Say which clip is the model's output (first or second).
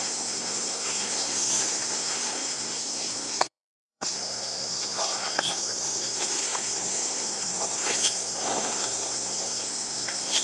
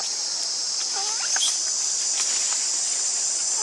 first